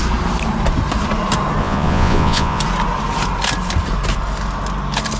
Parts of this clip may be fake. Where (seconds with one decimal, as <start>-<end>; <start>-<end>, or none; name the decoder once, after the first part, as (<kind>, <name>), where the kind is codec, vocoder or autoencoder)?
1.6-2.6 (vocoder, Vocos)